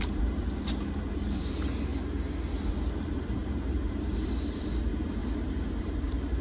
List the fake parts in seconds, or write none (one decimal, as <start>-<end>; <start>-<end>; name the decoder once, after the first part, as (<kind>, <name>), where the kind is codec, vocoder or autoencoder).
0.0-1.9 (vocoder, BigVGAN v2); 2.7-5.2; 5.8-6.4